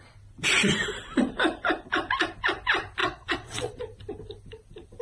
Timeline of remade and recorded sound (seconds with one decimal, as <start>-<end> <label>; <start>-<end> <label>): 0.0-3.0 recorded; 3.0-3.8 remade; 3.8-5.0 recorded